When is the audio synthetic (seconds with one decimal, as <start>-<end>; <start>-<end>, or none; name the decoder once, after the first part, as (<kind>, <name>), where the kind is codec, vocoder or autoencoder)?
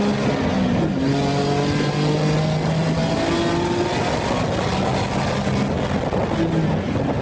none